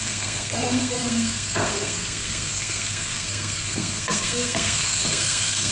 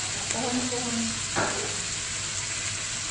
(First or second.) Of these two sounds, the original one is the second